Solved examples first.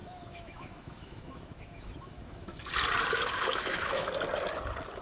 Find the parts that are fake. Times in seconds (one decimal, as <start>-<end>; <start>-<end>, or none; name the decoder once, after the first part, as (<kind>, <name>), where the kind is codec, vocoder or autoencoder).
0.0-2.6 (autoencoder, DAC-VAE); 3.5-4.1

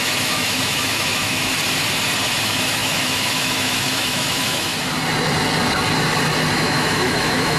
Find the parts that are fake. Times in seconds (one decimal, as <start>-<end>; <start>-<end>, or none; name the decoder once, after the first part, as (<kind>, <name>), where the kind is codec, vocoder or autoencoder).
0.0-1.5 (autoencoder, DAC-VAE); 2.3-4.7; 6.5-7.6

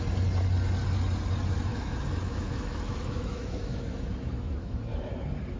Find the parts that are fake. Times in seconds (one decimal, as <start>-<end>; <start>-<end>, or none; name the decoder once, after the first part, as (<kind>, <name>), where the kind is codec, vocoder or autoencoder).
1.7-5.1 (autoencoder, DAC-VAE)